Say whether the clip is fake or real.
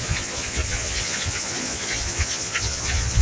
fake